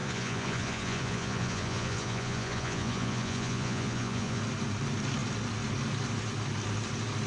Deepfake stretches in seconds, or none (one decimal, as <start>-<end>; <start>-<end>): 0.0-4.4